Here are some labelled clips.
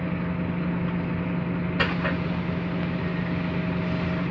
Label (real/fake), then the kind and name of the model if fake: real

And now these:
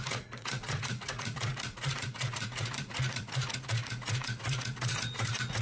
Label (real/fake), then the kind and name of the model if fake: fake, vocoder, Vocos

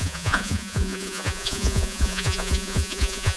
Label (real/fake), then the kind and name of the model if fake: fake, vocoder, Vocos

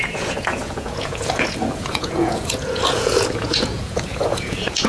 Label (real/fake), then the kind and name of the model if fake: fake, vocoder, Vocos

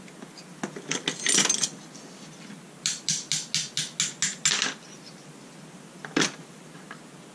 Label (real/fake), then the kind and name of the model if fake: real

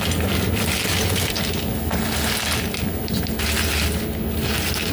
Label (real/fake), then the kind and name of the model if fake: real